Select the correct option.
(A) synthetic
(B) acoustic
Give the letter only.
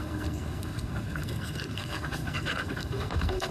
A